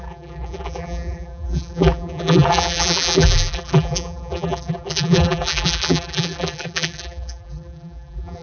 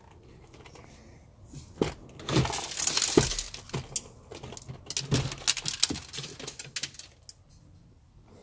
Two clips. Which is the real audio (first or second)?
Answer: second